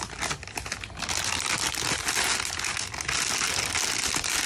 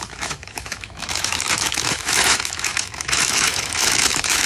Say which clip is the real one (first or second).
first